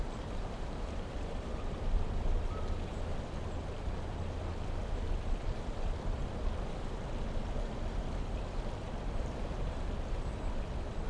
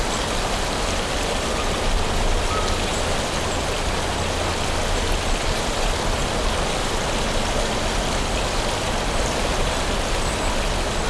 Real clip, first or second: second